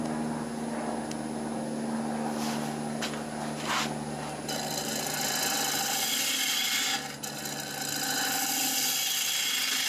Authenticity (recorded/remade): recorded